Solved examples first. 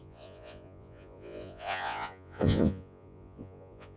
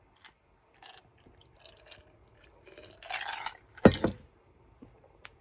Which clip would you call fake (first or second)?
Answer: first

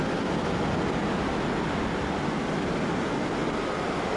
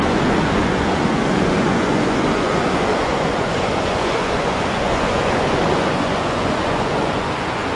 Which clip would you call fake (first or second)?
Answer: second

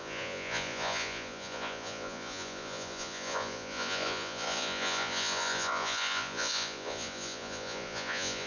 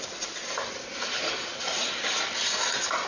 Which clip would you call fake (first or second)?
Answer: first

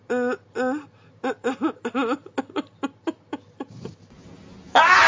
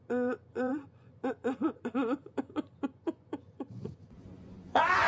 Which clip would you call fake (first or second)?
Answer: second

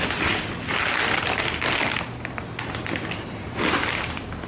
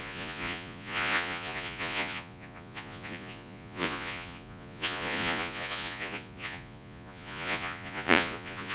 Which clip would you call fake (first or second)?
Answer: second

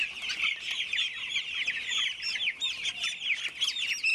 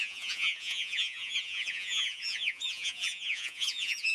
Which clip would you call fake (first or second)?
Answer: second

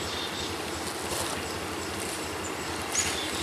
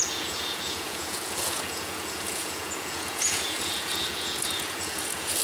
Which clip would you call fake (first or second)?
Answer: second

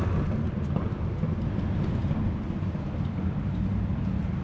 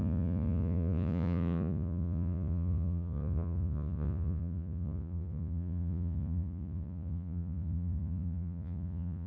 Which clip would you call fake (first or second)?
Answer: second